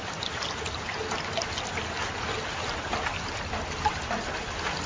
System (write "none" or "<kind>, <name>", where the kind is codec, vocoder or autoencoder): none